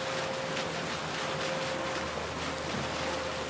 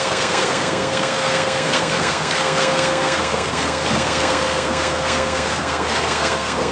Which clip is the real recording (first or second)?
first